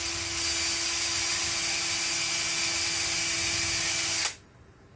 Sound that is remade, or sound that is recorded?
recorded